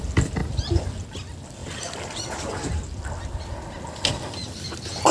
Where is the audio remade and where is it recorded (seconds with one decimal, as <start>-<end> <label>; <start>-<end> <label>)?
0.0-5.1 recorded